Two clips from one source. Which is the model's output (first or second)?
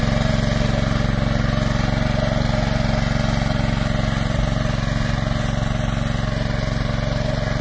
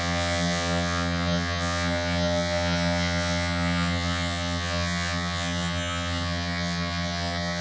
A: second